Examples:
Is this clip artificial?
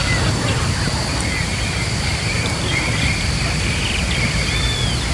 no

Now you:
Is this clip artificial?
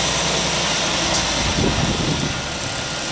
no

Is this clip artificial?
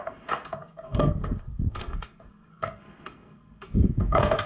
yes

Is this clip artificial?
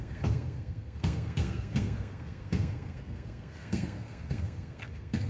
yes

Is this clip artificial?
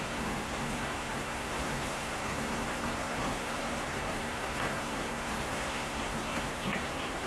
yes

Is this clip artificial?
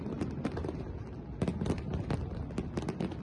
no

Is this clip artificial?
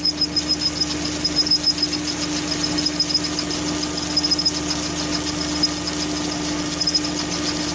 no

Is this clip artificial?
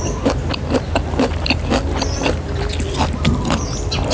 no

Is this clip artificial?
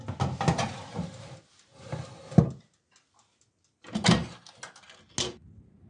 no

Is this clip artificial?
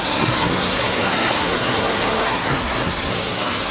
yes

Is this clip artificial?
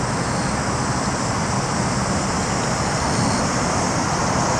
no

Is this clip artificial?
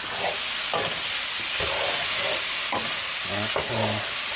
no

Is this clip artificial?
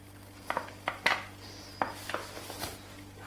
no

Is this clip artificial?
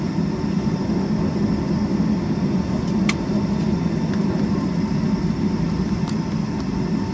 no